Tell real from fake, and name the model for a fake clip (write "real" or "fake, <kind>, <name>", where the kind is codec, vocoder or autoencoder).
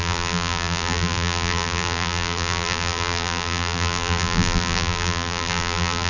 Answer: fake, vocoder, BigVGAN v2